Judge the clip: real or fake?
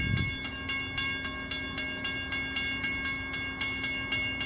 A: real